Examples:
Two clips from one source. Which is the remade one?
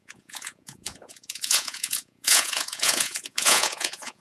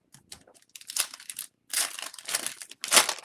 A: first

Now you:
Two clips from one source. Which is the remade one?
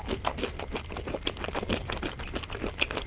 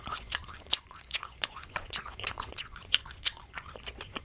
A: second